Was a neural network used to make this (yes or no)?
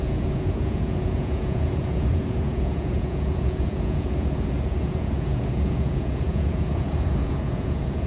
yes